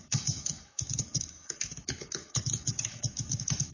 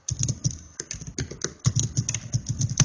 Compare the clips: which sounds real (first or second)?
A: second